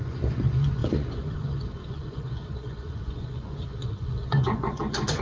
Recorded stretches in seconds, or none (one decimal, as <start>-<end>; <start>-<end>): none